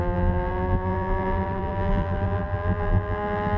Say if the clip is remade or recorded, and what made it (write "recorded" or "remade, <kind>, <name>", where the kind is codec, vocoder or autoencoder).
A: remade, vocoder, BigVGAN v2